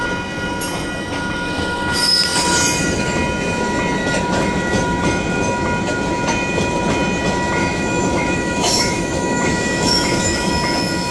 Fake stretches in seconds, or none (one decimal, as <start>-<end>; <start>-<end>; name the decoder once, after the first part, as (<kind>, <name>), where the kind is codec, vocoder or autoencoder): 7.6-10.5 (autoencoder, DAC-VAE)